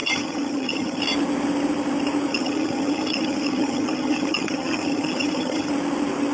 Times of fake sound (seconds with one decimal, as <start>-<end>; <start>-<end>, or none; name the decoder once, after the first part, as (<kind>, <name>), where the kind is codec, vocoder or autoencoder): 0.0-1.0 (vocoder, HiFi-GAN); 2.3-5.7